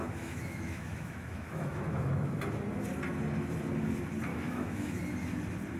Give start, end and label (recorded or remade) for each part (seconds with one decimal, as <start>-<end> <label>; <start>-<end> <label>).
0.0-2.4 remade; 2.4-4.3 recorded; 4.3-5.0 remade; 5.0-5.8 recorded